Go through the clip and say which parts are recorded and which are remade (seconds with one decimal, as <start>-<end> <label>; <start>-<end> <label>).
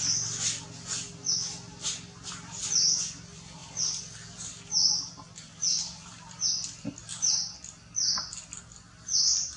0.0-9.6 recorded